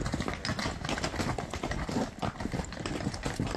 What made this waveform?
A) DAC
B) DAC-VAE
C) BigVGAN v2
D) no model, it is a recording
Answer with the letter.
D